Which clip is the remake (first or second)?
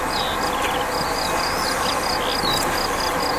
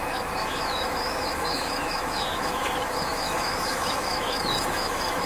second